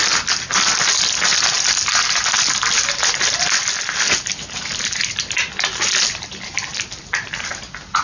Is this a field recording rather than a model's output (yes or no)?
yes